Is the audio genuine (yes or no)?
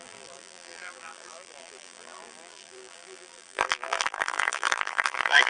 no